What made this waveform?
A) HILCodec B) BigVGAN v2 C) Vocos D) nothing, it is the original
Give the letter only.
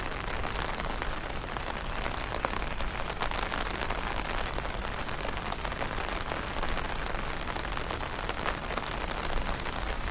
D